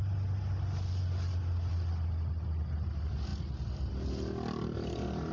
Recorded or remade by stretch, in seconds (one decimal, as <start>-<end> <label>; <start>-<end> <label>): 0.0-5.3 recorded